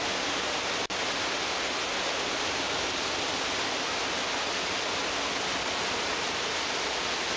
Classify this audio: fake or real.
real